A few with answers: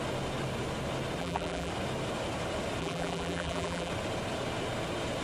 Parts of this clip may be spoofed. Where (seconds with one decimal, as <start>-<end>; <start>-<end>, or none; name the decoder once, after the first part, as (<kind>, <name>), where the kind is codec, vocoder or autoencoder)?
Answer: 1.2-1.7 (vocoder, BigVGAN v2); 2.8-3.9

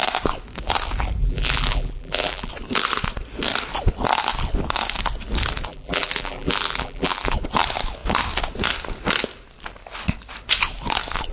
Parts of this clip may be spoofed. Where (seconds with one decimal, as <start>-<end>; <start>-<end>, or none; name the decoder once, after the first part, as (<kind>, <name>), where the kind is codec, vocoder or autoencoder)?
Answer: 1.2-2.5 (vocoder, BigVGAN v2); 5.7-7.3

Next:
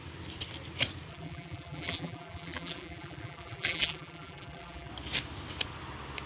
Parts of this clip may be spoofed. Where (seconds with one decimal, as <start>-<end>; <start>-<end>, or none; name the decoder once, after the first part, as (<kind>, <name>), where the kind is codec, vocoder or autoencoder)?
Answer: 1.1-4.9 (vocoder, BigVGAN v2)

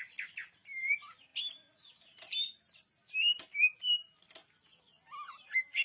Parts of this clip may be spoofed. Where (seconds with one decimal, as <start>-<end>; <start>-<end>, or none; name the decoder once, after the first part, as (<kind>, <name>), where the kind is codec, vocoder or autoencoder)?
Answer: none

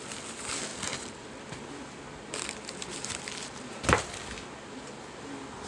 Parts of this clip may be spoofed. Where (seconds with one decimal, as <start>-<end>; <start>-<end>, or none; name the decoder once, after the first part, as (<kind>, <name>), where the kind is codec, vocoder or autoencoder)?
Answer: 0.7-4.1 (vocoder, BigVGAN v2)

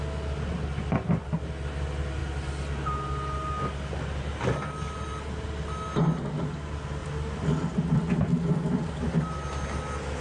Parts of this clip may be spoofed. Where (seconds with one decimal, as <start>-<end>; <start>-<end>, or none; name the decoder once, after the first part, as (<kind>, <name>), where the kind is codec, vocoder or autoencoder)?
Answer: 7.0-9.2 (vocoder, BigVGAN v2)

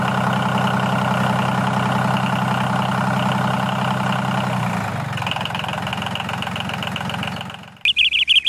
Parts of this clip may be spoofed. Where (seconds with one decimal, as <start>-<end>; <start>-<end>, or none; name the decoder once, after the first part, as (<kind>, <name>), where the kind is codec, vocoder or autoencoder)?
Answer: none